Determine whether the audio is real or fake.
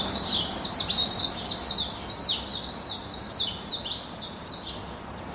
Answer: real